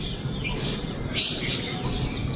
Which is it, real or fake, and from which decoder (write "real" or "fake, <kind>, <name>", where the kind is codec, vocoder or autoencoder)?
real